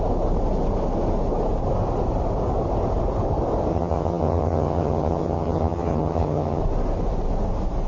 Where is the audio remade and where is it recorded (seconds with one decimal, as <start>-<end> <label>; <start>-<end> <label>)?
0.0-3.7 recorded; 3.7-6.6 remade; 6.6-7.9 recorded